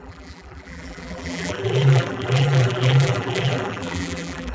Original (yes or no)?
no